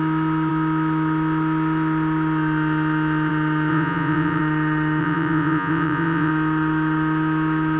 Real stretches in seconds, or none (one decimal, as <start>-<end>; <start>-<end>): 0.0-3.7; 4.4-5.0; 6.3-7.8